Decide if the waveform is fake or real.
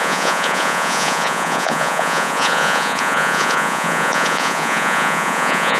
fake